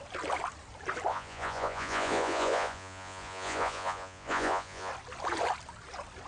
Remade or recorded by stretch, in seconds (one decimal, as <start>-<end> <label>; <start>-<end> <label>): 0.0-1.1 recorded; 1.1-4.9 remade; 4.9-6.3 recorded